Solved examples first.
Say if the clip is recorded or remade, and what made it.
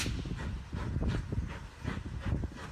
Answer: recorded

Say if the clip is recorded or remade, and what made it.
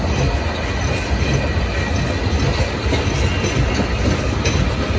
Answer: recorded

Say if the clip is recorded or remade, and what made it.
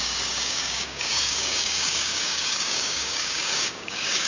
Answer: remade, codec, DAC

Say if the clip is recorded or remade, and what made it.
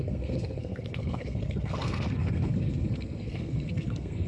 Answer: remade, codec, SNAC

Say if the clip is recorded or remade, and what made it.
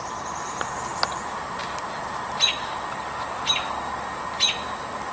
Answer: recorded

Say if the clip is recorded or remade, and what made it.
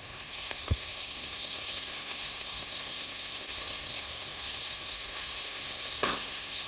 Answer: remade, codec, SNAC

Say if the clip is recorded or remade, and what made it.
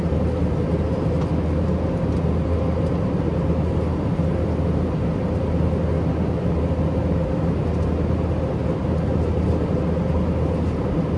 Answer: recorded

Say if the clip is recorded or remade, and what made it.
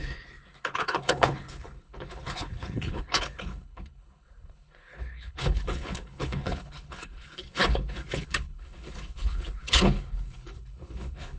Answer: remade, codec, HILCodec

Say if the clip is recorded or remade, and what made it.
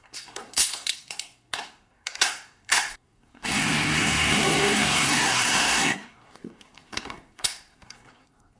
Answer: remade, codec, SNAC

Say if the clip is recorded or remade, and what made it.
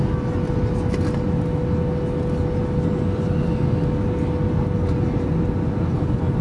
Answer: recorded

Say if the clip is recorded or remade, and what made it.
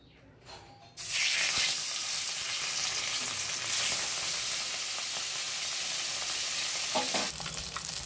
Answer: recorded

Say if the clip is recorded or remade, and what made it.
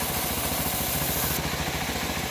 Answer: recorded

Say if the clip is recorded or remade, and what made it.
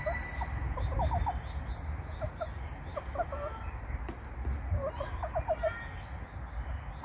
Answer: recorded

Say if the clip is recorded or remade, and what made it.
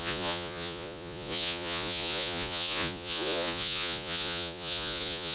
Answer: remade, vocoder, Vocos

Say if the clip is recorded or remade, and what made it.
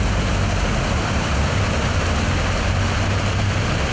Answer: recorded